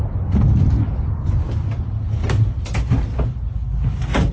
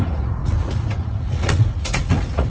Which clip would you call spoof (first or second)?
second